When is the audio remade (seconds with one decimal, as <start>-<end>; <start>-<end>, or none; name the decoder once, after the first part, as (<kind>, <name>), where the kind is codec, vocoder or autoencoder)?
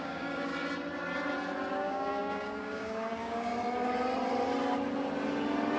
0.0-0.5 (codec, DAC); 1.7-3.5